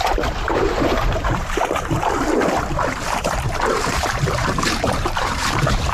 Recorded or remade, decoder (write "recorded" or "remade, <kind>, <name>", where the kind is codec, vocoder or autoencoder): remade, vocoder, BigVGAN v2